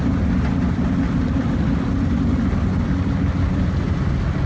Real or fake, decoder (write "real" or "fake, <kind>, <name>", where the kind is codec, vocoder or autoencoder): real